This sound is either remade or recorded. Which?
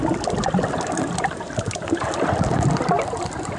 recorded